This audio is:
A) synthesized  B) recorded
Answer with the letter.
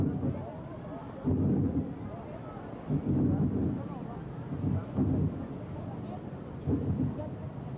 B